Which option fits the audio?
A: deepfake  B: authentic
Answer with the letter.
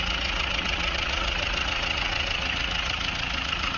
A